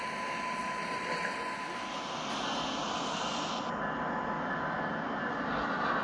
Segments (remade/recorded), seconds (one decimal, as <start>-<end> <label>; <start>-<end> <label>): 0.0-6.0 recorded